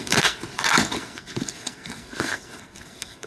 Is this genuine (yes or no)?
no